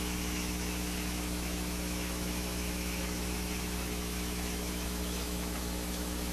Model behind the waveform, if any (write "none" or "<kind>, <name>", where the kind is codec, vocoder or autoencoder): autoencoder, DAC-VAE